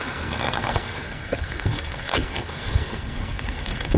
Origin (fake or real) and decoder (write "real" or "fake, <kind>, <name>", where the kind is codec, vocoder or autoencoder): fake, codec, SNAC